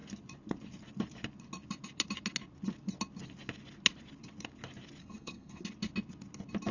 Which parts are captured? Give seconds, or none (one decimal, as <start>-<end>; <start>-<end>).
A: 0.0-5.0; 5.6-6.7